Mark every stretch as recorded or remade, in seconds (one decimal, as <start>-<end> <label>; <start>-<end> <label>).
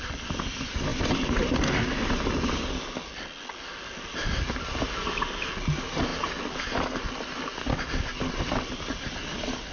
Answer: 0.0-9.7 recorded